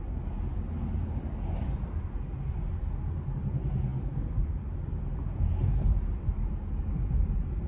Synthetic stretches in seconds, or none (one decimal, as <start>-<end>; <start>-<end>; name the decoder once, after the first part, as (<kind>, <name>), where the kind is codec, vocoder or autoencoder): none